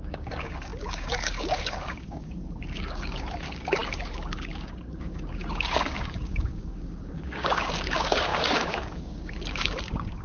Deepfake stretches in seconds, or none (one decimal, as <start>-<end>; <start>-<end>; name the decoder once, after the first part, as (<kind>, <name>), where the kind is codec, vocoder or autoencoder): 0.0-10.2 (codec, DAC)